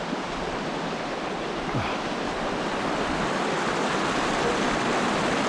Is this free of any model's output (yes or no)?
yes